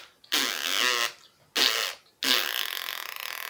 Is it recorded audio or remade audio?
recorded